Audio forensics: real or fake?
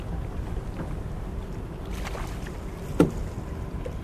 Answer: real